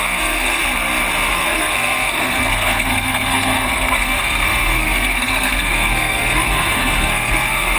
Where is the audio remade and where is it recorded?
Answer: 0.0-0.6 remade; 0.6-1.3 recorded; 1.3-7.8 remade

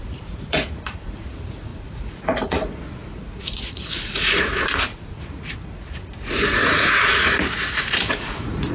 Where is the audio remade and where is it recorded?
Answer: 0.0-8.7 remade